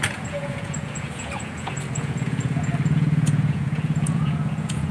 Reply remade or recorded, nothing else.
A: remade